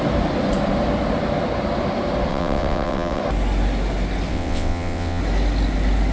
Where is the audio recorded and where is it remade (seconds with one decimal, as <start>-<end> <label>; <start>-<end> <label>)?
0.0-2.3 recorded; 2.3-3.2 remade; 3.2-4.3 recorded; 4.3-5.2 remade; 5.2-6.1 recorded